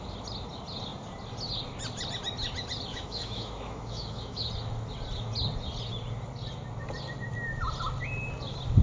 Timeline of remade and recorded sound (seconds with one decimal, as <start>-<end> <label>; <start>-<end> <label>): 0.0-2.9 recorded; 2.9-4.5 remade; 4.5-8.8 recorded